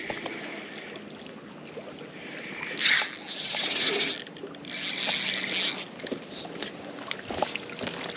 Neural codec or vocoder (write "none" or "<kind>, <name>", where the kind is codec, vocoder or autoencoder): none